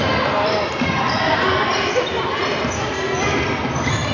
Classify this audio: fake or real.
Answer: real